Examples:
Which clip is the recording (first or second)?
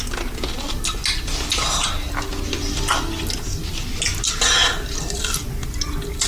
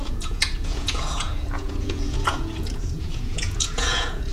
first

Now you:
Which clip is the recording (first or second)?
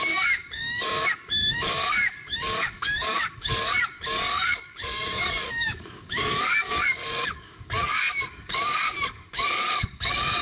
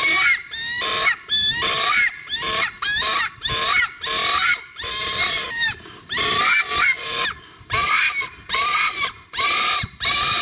second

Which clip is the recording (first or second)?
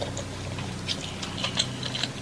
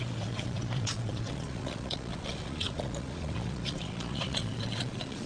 first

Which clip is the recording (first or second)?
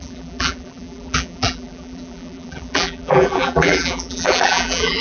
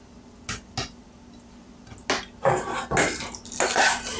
second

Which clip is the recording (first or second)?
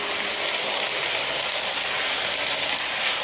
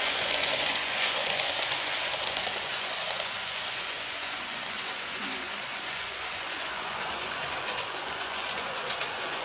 first